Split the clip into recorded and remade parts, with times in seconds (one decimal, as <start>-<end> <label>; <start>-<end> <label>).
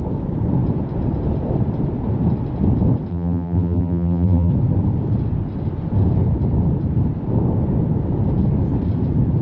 0.0-3.1 recorded; 3.1-4.5 remade; 4.5-9.4 recorded